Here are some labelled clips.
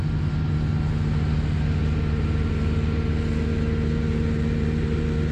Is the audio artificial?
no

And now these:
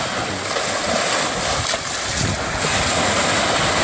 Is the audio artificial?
no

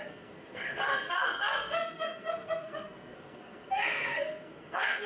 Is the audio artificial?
yes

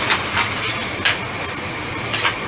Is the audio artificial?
no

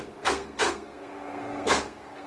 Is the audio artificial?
yes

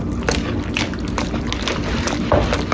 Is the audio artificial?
no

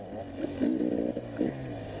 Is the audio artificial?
no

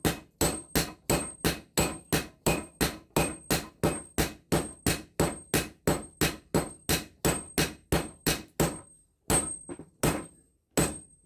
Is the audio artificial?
no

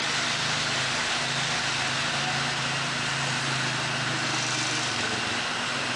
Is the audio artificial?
no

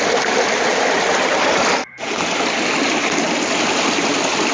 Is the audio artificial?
no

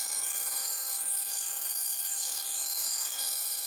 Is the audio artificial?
yes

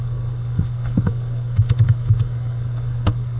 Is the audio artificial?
yes